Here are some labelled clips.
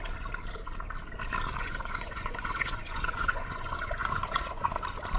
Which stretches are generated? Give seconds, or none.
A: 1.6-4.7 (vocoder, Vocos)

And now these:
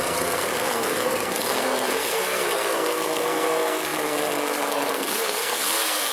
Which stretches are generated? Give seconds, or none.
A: 0.0-6.1 (codec, SNAC)

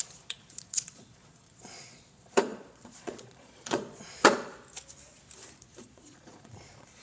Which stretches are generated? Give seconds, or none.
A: 0.0-4.5 (vocoder, Vocos); 5.6-7.0

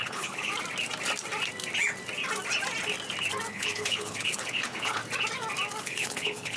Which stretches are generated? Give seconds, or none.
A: 0.0-0.5 (codec, HILCodec); 3.5-5.0; 5.8-6.6

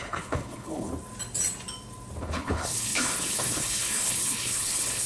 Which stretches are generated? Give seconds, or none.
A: 0.0-0.9 (codec, HILCodec); 2.2-5.1

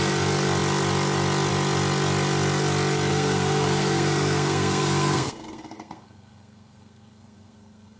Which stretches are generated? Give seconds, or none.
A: 3.1-8.0 (codec, SNAC)